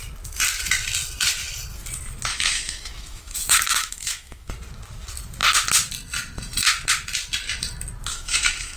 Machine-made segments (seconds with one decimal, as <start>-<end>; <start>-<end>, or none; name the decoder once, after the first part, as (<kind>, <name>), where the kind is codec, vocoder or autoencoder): 2.3-4.5 (autoencoder, DAC-VAE); 8.1-8.8